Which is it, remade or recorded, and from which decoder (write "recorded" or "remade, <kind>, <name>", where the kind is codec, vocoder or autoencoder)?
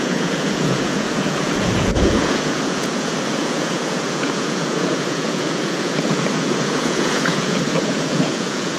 remade, vocoder, Vocos